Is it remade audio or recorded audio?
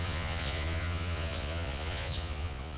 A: remade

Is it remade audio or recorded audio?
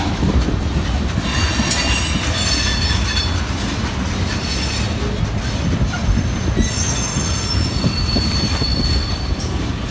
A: recorded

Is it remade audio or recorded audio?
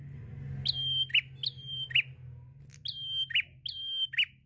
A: recorded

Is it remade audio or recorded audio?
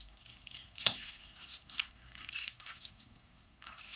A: remade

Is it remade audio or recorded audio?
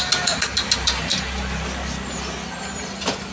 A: recorded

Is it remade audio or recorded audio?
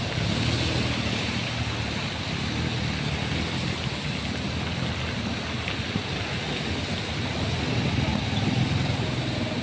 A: recorded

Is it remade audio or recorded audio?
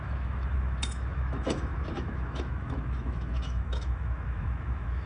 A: remade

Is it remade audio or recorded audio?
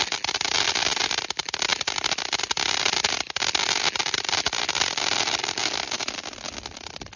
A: recorded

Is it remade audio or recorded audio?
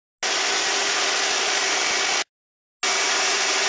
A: recorded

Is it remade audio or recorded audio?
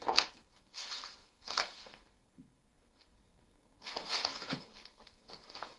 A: remade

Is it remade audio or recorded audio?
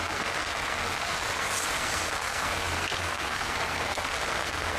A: remade